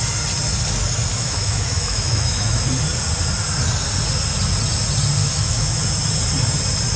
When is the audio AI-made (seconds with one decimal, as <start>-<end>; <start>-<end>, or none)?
1.1-2.6; 5.2-5.8